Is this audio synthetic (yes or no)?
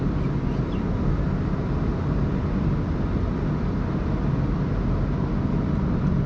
no